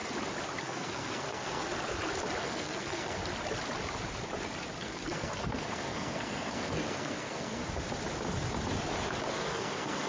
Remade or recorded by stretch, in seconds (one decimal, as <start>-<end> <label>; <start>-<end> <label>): 0.0-0.6 recorded; 0.6-1.7 remade; 1.7-2.4 recorded; 2.4-3.2 remade; 3.2-4.8 recorded; 4.8-7.6 remade; 7.6-9.3 recorded; 9.3-10.1 remade